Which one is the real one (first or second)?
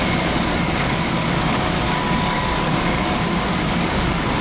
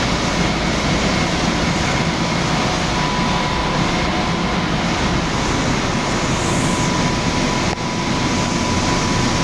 second